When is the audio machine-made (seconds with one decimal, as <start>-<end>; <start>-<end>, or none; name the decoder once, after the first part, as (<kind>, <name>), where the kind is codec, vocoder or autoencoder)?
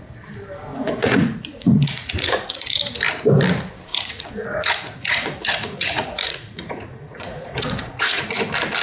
0.7-2.8 (vocoder, Vocos); 3.9-8.3